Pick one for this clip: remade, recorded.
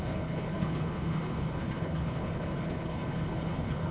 remade